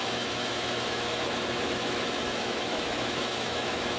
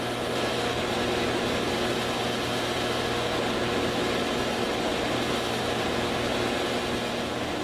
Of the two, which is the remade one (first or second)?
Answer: first